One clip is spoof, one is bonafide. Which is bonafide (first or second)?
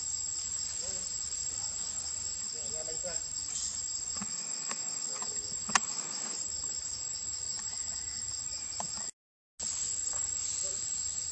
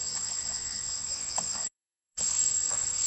first